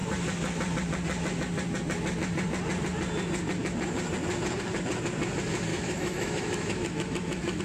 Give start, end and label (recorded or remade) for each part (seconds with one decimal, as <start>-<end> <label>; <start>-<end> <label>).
0.0-5.7 recorded; 5.7-7.6 remade